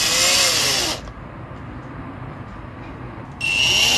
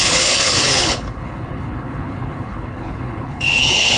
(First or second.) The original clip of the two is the first